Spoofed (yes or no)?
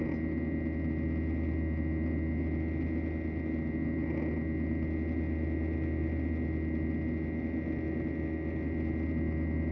no